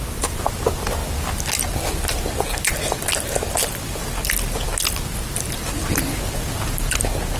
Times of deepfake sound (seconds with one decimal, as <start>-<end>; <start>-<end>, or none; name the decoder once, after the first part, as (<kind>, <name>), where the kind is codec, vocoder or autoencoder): none